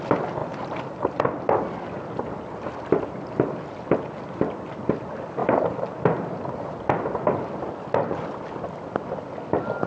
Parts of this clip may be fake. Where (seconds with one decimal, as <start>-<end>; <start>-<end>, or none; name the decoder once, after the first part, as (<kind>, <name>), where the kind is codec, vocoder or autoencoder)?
0.4-1.2 (vocoder, BigVGAN v2); 5.4-5.9

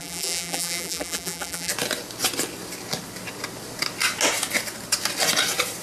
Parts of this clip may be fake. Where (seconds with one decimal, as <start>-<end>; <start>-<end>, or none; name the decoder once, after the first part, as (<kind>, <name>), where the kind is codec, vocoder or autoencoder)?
0.0-1.7 (vocoder, BigVGAN v2)

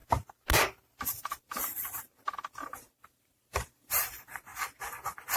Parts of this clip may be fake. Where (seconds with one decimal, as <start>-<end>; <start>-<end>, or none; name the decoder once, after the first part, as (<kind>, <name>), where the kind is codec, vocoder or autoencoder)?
1.2-4.5 (vocoder, BigVGAN v2)

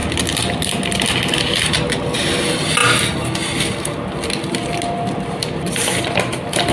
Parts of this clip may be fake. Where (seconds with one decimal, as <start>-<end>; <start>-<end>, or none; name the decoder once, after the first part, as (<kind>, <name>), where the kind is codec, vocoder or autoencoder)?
none

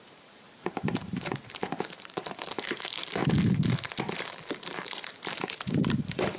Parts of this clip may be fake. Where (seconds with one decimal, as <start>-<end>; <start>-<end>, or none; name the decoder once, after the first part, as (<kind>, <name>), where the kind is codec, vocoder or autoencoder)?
0.0-3.2 (vocoder, BigVGAN v2); 4.0-6.4

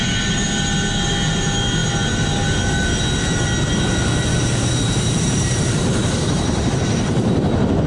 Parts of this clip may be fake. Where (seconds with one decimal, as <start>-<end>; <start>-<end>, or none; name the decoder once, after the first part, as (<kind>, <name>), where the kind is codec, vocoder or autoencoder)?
4.3-6.7 (vocoder, BigVGAN v2)

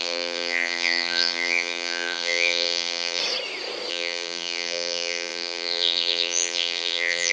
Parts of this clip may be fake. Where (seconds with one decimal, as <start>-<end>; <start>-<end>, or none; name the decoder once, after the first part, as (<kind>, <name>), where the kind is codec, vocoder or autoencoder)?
0.0-3.2 (vocoder, BigVGAN v2); 3.9-7.3

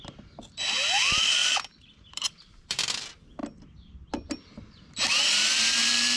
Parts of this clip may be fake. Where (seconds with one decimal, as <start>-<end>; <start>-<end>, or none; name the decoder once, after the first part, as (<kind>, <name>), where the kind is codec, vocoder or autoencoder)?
1.4-3.0 (vocoder, BigVGAN v2)